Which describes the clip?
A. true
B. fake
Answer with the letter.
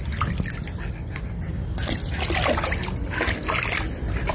A